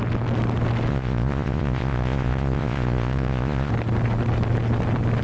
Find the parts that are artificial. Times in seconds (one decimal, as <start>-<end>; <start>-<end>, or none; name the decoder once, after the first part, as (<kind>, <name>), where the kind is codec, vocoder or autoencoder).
0.9-3.7 (vocoder, Vocos)